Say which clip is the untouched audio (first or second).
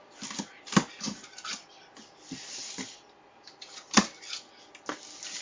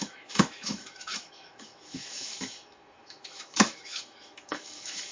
first